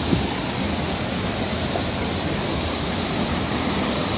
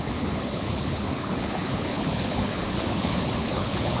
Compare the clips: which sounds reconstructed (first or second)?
second